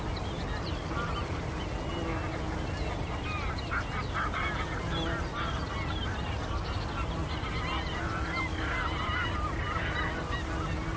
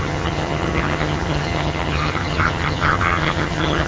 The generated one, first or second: second